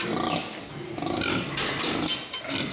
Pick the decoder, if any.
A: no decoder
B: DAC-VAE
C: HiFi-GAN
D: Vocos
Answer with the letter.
A